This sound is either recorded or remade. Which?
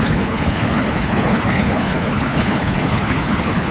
remade